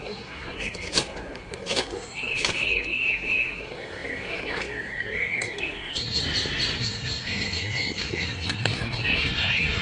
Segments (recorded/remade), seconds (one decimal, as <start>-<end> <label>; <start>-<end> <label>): 0.0-6.2 remade; 6.2-6.8 recorded; 6.8-9.8 remade

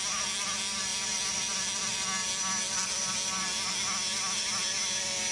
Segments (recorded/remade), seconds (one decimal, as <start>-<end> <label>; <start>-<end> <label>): 0.0-5.3 recorded

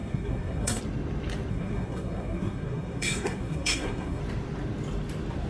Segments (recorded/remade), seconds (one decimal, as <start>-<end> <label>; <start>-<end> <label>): 0.0-0.8 remade; 0.8-1.5 recorded; 1.5-4.2 remade; 4.2-5.5 recorded

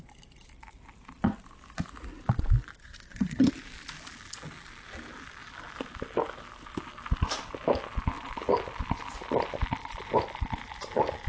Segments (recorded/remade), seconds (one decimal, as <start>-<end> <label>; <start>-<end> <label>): 0.0-2.8 recorded; 2.8-3.5 remade; 3.5-11.3 recorded

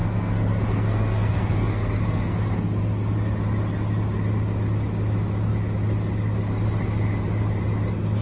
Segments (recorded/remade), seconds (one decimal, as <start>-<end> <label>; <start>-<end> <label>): 0.0-2.8 remade; 2.8-8.2 recorded

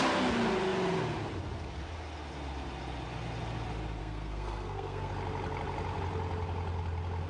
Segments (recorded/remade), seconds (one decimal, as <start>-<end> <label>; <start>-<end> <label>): 0.0-4.0 recorded; 4.0-5.1 remade; 5.1-7.3 recorded